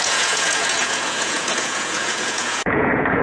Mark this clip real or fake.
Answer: fake